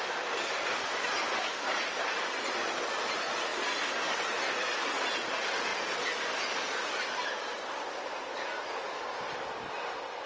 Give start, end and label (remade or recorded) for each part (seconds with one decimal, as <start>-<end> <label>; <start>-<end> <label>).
0.0-10.3 recorded